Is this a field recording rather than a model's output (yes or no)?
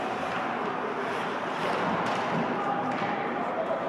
no